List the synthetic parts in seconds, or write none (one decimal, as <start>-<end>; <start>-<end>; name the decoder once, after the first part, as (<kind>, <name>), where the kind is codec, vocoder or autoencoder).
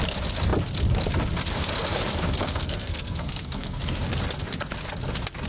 2.4-3.8 (codec, SNAC)